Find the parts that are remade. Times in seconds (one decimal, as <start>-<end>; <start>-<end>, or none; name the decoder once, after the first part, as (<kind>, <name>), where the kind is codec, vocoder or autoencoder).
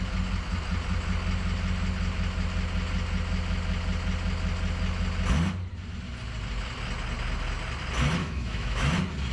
8.2-8.9 (autoencoder, DAC-VAE)